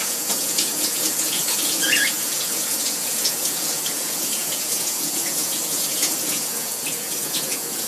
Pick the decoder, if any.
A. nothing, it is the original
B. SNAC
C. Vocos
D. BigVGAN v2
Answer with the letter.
C